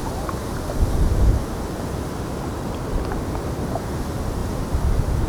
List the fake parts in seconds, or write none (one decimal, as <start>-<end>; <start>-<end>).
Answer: none